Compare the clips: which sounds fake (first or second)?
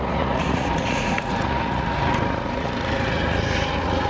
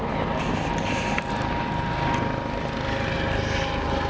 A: first